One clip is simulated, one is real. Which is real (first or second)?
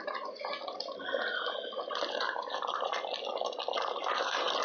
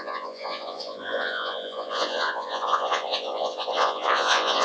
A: first